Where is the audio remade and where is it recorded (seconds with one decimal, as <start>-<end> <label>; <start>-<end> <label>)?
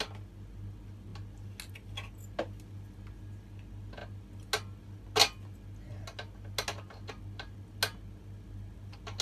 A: 0.0-9.2 recorded